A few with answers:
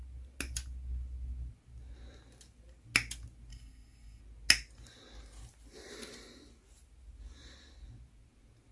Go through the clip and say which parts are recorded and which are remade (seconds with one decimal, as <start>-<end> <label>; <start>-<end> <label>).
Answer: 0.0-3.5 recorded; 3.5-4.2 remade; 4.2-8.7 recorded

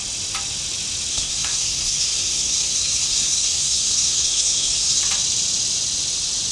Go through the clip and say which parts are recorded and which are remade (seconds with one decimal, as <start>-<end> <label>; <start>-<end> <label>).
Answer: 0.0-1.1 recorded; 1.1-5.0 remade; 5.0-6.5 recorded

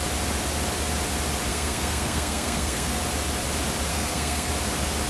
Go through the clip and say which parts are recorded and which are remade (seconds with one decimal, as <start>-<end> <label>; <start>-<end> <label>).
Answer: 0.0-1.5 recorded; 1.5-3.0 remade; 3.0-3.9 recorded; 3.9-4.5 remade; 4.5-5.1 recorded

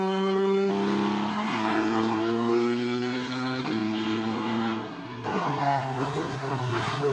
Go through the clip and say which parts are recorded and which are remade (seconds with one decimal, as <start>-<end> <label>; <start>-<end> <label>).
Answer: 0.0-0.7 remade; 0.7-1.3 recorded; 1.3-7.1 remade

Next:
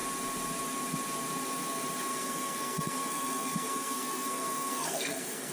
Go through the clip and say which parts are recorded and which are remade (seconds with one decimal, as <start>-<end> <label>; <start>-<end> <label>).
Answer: 0.0-2.1 recorded; 2.1-5.5 remade